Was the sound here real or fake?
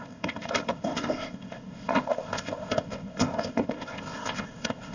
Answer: fake